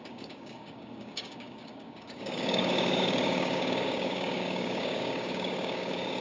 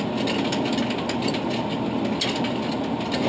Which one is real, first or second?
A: second